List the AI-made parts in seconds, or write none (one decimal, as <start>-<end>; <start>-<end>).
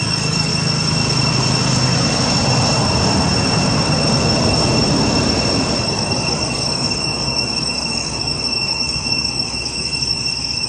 0.0-0.5; 5.8-10.7